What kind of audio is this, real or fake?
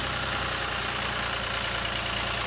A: real